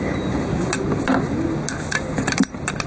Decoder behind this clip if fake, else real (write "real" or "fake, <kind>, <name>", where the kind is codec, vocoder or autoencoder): real